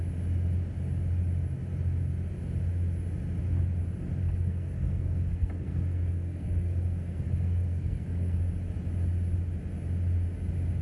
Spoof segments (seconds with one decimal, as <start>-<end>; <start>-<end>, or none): 4.2-8.4